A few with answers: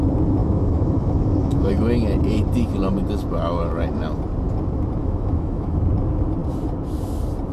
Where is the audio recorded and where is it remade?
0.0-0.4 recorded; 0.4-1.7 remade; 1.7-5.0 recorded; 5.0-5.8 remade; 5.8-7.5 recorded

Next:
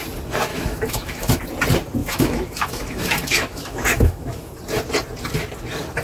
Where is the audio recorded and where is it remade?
0.0-0.5 recorded; 0.5-1.4 remade; 1.4-2.0 recorded; 2.0-4.5 remade; 4.5-6.0 recorded

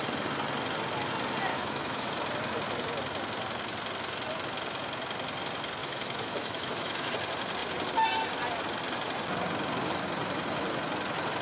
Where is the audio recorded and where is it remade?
0.0-1.5 recorded; 1.5-2.1 remade; 2.1-5.8 recorded; 5.8-7.1 remade; 7.1-11.4 recorded

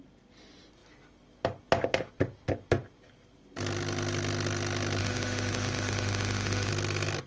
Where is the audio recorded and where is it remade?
0.0-5.0 recorded; 5.0-6.7 remade; 6.7-7.3 recorded

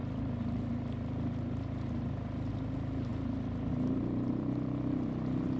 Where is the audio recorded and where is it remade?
0.0-5.6 recorded

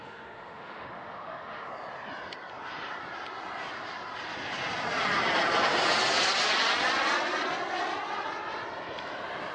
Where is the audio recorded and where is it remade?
0.0-1.7 remade; 1.7-9.5 recorded

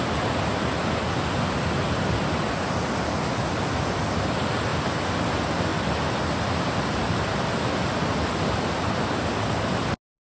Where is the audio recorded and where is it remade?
0.0-10.2 recorded